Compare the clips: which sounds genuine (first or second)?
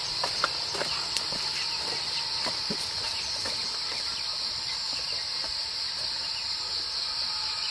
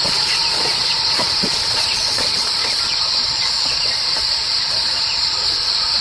first